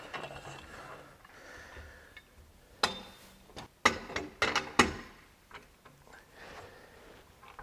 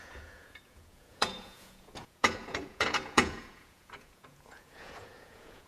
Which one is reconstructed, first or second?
second